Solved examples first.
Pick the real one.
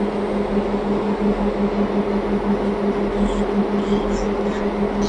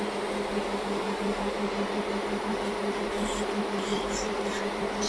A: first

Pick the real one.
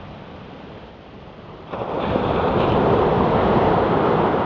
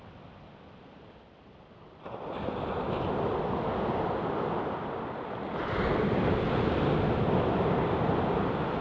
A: second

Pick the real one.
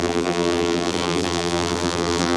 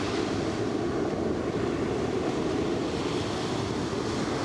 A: second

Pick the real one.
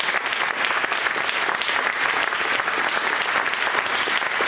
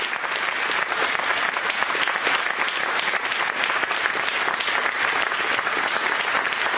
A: first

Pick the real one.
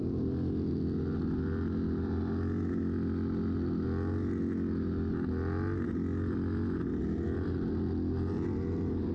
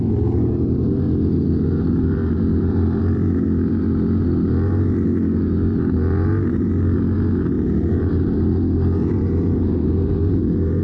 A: first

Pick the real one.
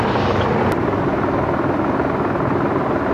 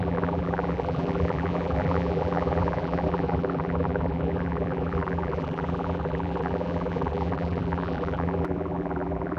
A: first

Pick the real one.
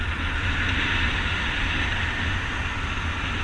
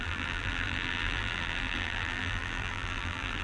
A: first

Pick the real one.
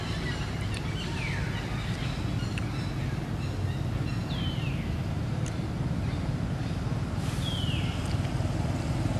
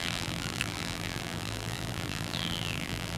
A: first